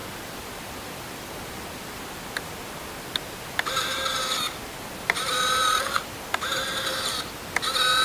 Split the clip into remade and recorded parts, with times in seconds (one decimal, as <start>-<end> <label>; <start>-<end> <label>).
0.0-2.3 remade; 2.3-4.1 recorded; 4.1-6.0 remade; 6.0-8.0 recorded